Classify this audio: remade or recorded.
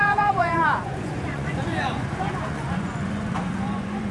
remade